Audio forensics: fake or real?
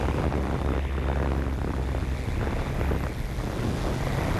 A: real